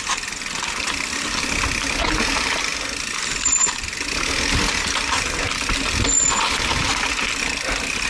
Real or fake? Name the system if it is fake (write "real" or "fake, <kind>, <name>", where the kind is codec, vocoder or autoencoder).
real